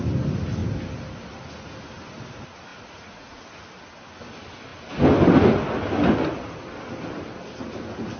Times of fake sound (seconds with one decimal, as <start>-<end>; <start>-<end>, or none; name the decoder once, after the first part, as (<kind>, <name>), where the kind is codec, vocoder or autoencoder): 2.7-3.4 (vocoder, Vocos)